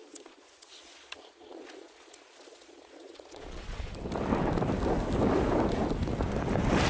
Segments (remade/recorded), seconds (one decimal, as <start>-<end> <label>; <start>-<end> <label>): 0.0-3.9 remade; 3.9-6.9 recorded